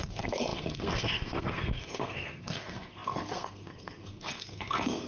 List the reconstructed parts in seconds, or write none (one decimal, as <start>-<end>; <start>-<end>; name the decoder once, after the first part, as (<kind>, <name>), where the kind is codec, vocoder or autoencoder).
0.0-5.1 (codec, SNAC)